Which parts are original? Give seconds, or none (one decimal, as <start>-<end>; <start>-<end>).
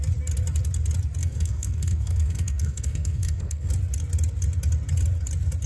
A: 0.0-1.2; 3.7-5.7